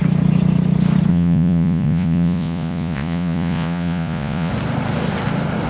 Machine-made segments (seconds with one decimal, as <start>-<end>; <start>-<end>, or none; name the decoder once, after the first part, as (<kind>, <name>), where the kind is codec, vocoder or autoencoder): 1.1-4.5 (vocoder, Vocos)